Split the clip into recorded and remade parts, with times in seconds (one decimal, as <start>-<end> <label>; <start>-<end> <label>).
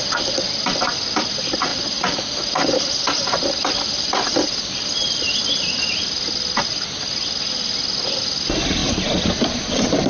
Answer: 0.0-1.7 recorded; 1.7-5.4 remade; 5.4-10.1 recorded